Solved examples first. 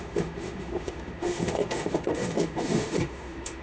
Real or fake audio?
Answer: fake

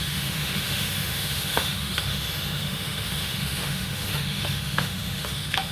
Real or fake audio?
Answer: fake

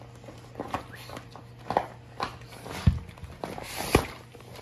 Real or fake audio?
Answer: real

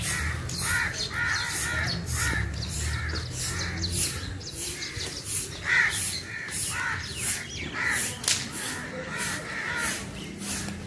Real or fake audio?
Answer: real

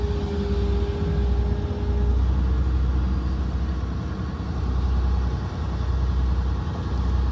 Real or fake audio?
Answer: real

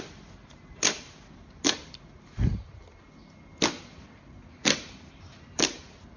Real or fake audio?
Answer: real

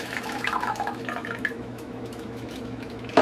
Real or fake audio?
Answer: fake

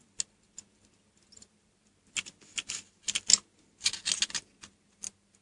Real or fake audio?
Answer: real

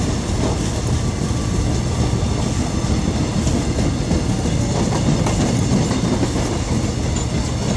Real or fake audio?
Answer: real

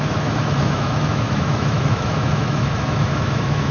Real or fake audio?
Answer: fake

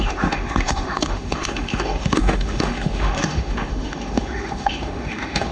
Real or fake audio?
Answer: fake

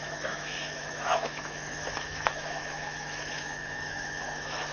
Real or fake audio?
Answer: fake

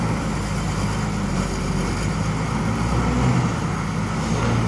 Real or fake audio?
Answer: real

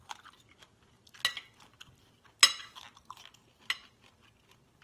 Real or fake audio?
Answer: real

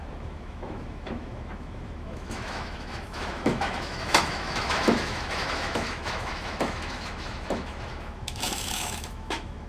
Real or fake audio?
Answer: fake